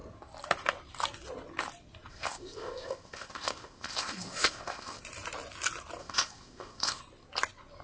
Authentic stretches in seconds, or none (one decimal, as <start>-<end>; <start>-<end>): 0.0-2.1; 5.0-6.0; 7.0-7.8